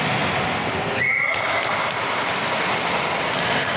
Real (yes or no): yes